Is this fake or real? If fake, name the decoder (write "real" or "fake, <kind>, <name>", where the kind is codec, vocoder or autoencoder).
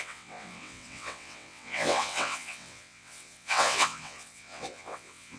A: fake, vocoder, WaveNeXt